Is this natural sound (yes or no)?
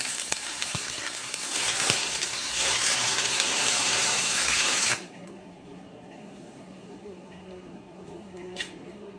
no